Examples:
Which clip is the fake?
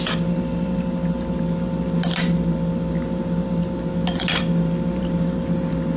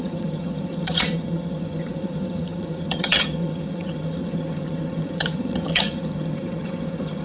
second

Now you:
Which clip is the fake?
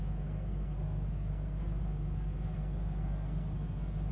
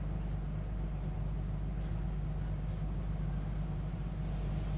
first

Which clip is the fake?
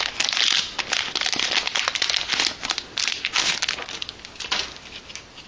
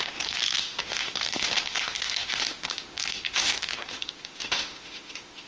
second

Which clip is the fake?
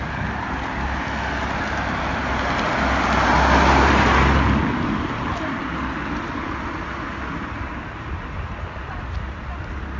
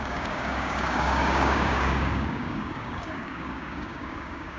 second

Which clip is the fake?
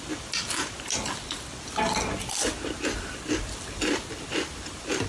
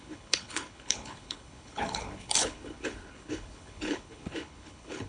second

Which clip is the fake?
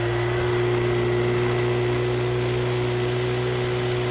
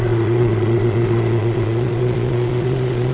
second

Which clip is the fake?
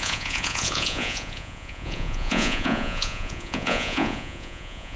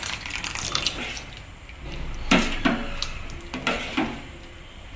first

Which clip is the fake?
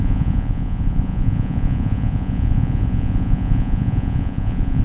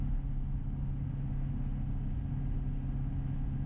first